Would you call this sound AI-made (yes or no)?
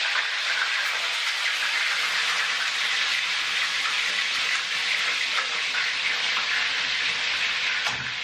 no